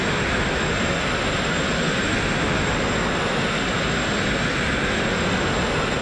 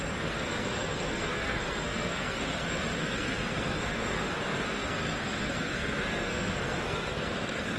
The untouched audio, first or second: first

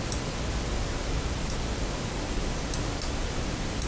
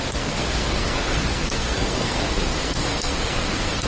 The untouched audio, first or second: first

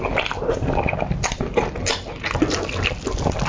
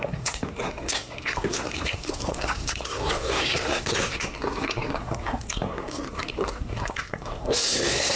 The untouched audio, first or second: first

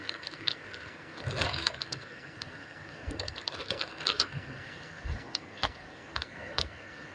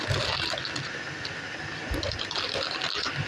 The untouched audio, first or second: second